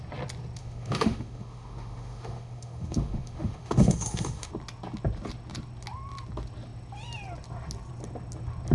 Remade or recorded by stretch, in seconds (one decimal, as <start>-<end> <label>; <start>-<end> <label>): 0.0-0.6 recorded; 0.6-4.5 remade; 4.5-8.7 recorded